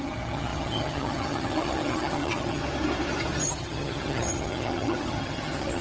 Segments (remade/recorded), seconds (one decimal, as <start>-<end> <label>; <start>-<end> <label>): 0.0-2.6 remade; 2.6-3.4 recorded; 3.4-5.8 remade